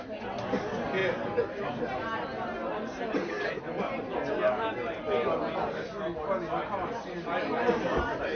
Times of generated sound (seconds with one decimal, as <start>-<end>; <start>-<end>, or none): none